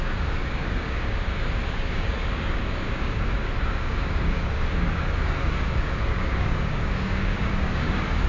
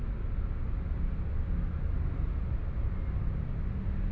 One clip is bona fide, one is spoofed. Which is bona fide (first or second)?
second